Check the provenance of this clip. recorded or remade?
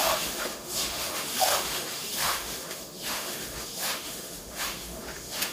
remade